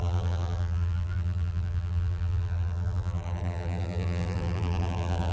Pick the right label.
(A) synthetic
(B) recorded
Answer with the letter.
A